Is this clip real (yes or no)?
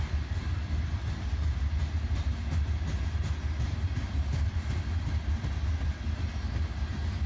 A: yes